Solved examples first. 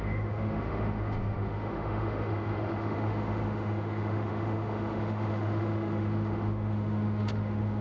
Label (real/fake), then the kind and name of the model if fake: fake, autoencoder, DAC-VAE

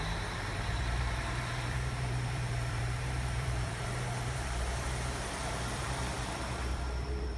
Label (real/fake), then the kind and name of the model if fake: fake, vocoder, BigVGAN v2